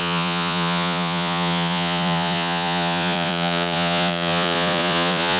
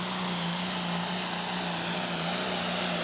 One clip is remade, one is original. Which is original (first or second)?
second